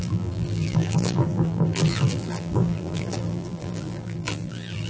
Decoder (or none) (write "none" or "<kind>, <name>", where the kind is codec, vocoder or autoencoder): vocoder, BigVGAN v2